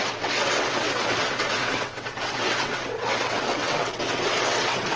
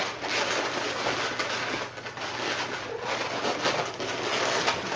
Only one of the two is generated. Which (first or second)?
first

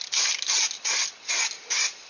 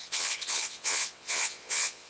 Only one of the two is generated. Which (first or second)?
second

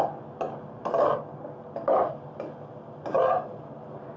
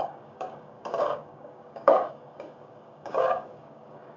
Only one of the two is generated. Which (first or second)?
second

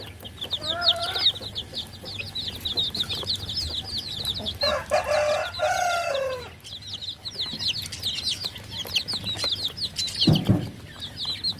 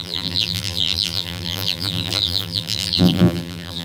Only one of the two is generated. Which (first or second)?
second